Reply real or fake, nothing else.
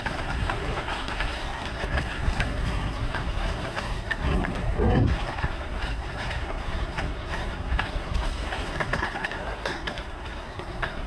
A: fake